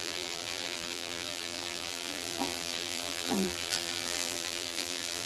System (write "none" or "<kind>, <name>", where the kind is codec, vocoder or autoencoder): vocoder, BigVGAN v2